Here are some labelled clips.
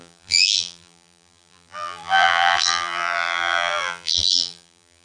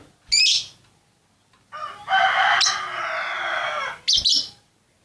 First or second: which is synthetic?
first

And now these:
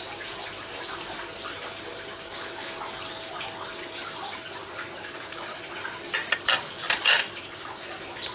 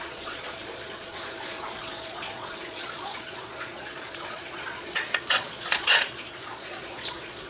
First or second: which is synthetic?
second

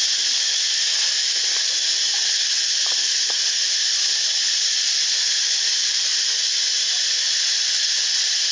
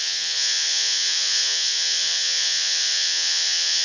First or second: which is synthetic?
second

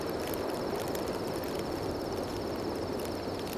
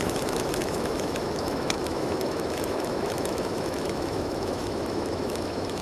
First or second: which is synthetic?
second